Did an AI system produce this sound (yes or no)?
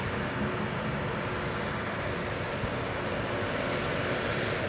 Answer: no